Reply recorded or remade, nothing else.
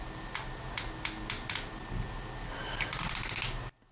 recorded